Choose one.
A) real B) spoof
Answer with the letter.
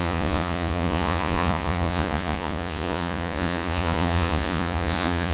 B